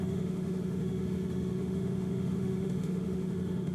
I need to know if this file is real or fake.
fake